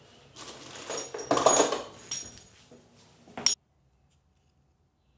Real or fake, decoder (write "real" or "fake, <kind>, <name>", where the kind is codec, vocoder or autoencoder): real